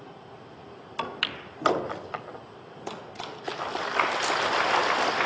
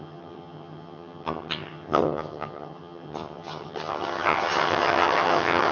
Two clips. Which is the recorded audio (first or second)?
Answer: first